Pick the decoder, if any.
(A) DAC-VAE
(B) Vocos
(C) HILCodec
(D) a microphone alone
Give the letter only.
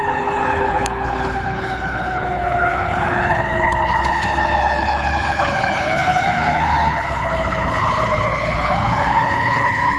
C